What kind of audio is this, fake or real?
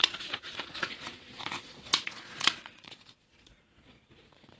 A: fake